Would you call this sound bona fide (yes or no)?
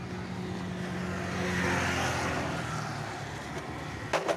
yes